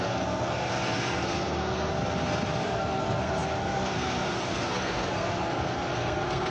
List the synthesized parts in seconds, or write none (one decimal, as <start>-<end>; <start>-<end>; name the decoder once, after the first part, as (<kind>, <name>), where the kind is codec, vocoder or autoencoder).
0.0-0.7 (codec, SNAC); 1.2-1.9; 2.6-6.5